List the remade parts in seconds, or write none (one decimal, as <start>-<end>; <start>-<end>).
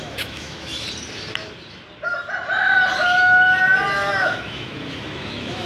0.0-0.7; 4.1-5.7